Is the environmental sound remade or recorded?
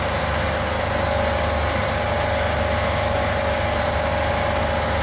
recorded